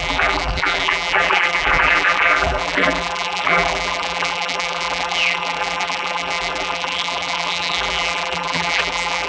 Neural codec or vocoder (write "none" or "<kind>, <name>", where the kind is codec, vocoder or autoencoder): vocoder, BigVGAN v2